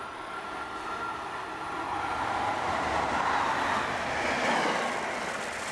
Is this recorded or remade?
recorded